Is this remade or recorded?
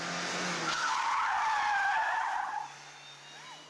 recorded